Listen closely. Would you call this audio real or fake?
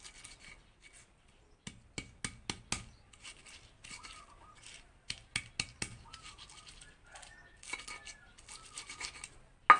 real